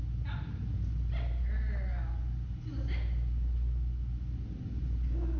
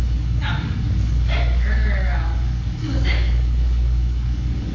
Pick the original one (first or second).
first